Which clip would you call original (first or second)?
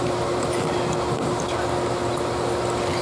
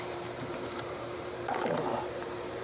first